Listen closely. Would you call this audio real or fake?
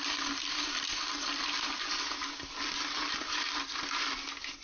real